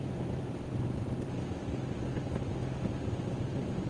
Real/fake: real